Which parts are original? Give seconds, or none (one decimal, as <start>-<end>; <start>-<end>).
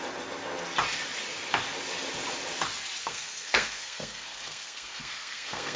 0.0-3.0